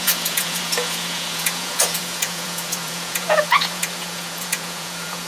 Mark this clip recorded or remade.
remade